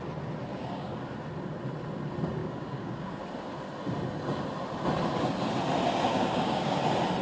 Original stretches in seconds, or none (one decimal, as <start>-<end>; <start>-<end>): 0.0-0.5; 1.0-2.4; 3.2-6.1; 6.8-7.2